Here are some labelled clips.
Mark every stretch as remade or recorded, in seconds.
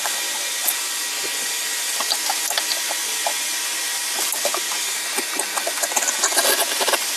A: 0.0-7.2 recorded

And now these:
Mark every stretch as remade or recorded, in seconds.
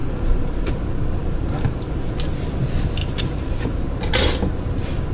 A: 0.0-0.7 remade; 0.7-1.2 recorded; 1.2-2.1 remade; 2.1-3.0 recorded; 3.0-3.6 remade; 3.6-5.1 recorded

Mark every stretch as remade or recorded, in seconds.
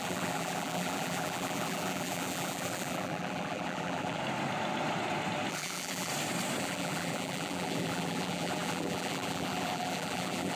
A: 0.0-4.2 remade; 4.2-5.5 recorded; 5.5-6.1 remade; 6.1-6.6 recorded; 6.6-10.6 remade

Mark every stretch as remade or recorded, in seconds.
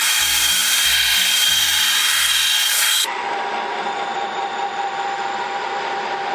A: 0.0-4.1 recorded; 4.1-6.3 remade